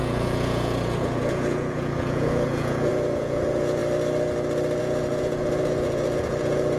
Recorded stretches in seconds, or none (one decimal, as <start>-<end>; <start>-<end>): 3.8-4.8